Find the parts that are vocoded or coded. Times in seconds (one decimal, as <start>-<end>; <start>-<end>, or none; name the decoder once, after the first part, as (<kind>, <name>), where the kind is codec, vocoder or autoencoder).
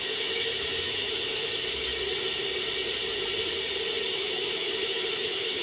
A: 0.0-1.9 (autoencoder, DAC-VAE); 4.1-5.6